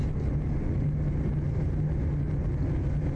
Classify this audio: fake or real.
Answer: real